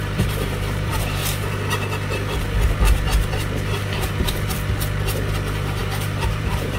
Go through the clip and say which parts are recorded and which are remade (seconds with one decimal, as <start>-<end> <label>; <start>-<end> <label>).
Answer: 0.0-1.2 remade; 1.2-5.3 recorded; 5.3-6.8 remade